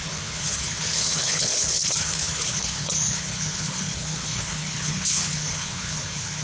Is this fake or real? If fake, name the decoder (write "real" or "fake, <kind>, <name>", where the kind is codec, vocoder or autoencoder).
fake, codec, HILCodec